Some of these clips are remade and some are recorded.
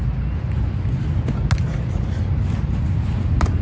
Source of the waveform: recorded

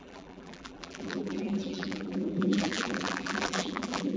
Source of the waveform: remade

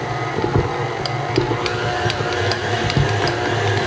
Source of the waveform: recorded